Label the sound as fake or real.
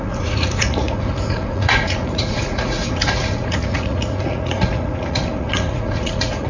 fake